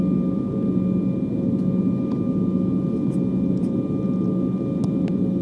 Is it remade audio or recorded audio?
recorded